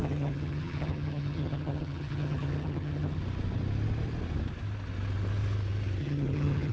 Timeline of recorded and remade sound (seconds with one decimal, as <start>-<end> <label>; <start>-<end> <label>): 0.0-3.2 remade; 3.2-6.0 recorded; 6.0-6.7 remade